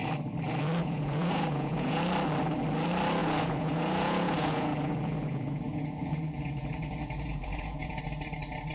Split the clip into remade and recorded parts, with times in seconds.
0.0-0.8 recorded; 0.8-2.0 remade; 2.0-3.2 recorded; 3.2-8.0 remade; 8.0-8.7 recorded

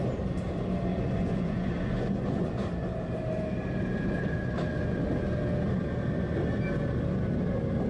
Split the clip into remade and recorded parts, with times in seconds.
0.0-0.9 recorded; 0.9-2.5 remade; 2.5-7.9 recorded

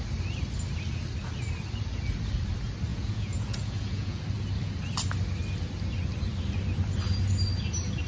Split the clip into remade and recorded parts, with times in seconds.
0.0-2.9 recorded; 2.9-4.2 remade; 4.2-8.1 recorded